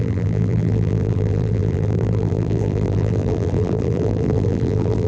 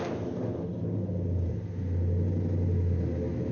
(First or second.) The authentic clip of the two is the second